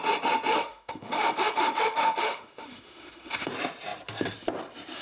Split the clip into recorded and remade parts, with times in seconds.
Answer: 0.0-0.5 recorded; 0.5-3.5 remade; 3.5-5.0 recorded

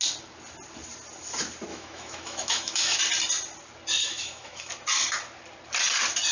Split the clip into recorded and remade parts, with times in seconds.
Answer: 0.0-1.7 recorded; 1.7-3.0 remade; 3.0-4.0 recorded; 4.0-4.7 remade; 4.7-6.3 recorded

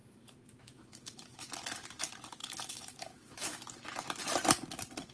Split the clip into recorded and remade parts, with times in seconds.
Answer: 0.0-1.5 remade; 1.5-2.4 recorded; 2.4-3.6 remade; 3.6-5.1 recorded

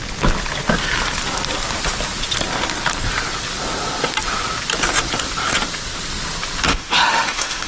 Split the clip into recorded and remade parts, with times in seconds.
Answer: 0.0-6.7 recorded; 6.7-7.7 remade

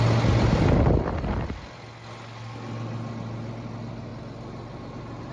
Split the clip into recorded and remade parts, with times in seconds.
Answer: 0.0-5.3 recorded

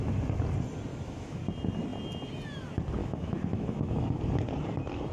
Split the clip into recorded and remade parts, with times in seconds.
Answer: 0.0-0.9 recorded; 0.9-1.4 remade; 1.4-3.0 recorded; 3.0-4.2 remade; 4.2-5.1 recorded

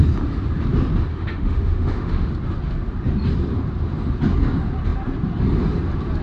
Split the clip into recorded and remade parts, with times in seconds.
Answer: 0.0-1.1 recorded; 1.1-2.3 remade; 2.3-6.2 recorded